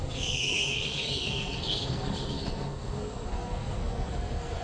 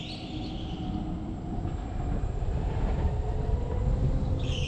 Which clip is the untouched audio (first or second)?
second